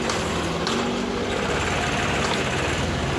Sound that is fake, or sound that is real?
real